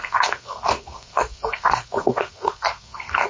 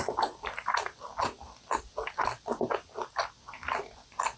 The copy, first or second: first